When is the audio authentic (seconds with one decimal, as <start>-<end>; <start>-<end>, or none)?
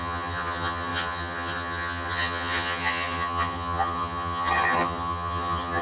none